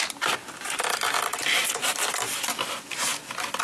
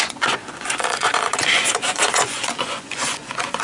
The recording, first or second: first